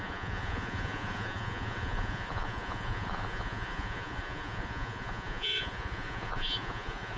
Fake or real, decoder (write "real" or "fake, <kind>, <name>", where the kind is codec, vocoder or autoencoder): fake, vocoder, Vocos